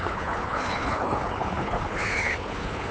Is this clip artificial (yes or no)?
yes